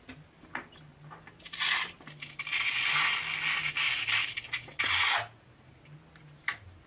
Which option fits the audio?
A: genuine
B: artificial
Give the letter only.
A